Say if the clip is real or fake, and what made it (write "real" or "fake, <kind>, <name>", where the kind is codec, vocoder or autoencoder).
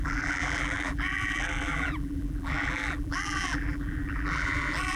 fake, vocoder, BigVGAN v2